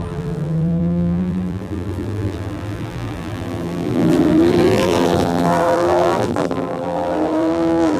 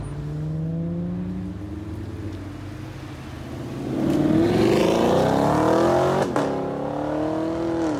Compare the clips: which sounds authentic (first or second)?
second